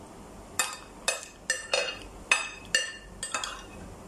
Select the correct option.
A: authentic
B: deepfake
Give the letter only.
A